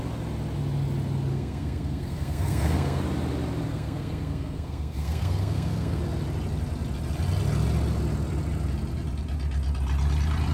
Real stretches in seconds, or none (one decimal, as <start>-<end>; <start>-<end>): 0.0-1.3; 3.0-3.7; 6.0-10.5